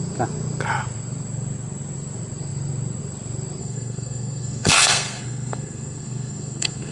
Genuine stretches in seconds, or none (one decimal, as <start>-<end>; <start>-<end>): 0.0-3.6